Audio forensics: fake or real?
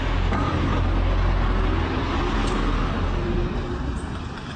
real